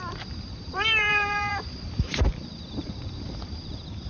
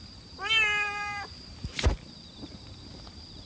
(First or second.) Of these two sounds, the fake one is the first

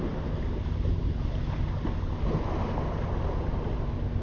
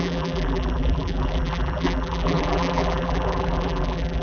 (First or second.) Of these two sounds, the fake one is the second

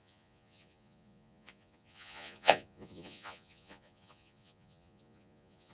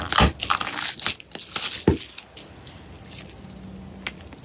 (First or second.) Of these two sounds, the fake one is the first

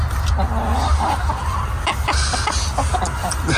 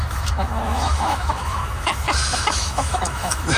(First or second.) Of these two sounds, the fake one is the second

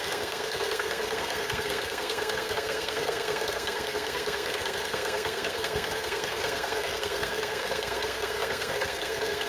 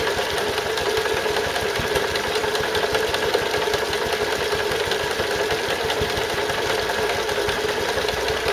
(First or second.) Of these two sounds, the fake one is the first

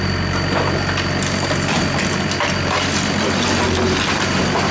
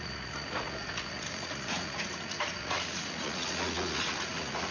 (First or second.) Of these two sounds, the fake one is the second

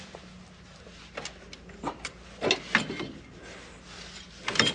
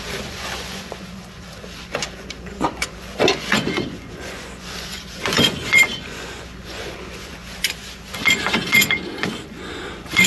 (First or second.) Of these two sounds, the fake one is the second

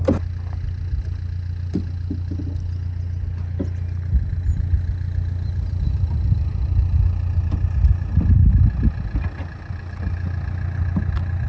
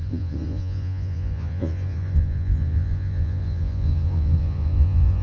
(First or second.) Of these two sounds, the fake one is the second